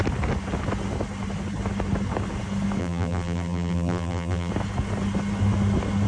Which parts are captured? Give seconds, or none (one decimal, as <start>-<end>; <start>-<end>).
0.0-2.8; 4.5-6.1

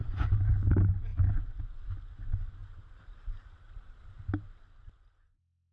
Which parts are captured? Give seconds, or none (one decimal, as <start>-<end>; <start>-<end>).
0.0-1.1; 1.9-2.6; 4.2-5.7

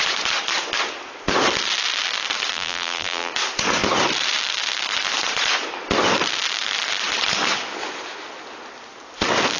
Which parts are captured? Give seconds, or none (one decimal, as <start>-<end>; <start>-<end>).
0.0-2.5; 3.3-9.6